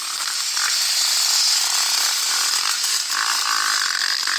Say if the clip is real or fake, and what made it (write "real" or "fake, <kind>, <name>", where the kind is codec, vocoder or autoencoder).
real